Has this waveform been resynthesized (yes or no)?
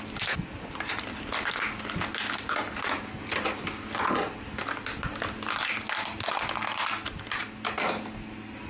no